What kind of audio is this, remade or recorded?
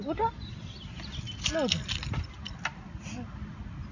recorded